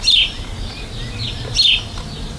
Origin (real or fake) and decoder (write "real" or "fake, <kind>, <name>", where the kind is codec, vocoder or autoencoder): real